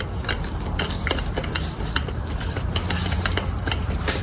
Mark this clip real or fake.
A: real